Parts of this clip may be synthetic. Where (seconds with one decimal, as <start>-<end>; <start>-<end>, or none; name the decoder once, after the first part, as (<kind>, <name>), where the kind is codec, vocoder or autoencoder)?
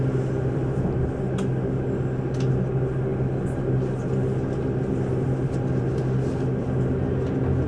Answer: none